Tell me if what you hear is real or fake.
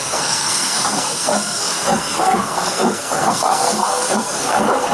fake